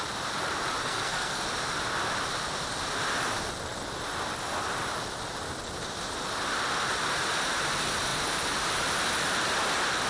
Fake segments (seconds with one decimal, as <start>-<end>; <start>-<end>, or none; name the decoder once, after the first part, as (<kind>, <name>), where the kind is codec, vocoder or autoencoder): 0.8-1.4 (codec, SNAC)